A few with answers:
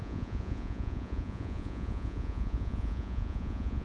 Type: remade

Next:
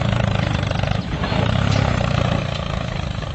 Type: remade